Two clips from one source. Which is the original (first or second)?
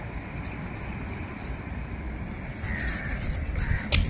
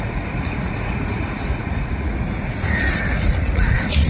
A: first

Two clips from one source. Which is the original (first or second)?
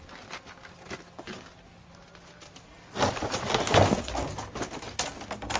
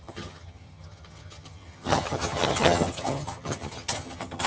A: first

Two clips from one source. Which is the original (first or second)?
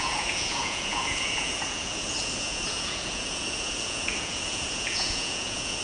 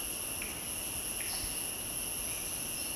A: second